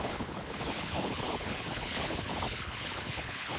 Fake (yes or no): yes